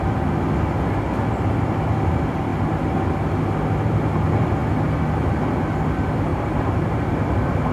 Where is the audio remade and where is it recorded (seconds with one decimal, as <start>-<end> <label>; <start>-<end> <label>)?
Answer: 0.0-6.3 recorded; 6.3-7.7 remade